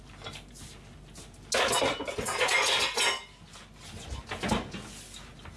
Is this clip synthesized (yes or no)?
no